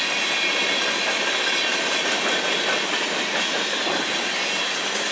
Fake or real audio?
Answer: real